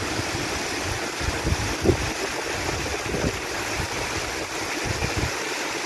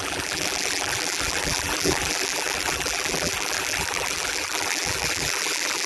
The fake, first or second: second